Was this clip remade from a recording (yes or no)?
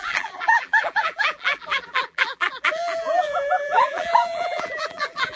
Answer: yes